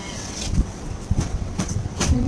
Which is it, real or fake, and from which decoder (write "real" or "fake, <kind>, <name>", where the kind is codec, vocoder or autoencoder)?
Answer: fake, vocoder, WaveNeXt